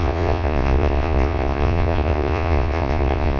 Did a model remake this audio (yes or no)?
yes